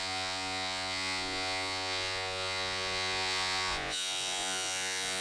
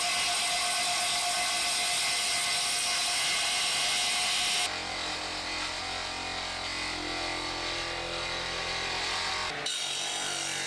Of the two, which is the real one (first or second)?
second